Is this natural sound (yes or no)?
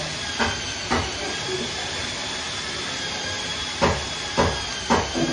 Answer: yes